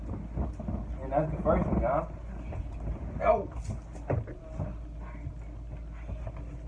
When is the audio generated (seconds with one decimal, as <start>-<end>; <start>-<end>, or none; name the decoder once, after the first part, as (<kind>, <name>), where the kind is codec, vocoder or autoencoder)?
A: none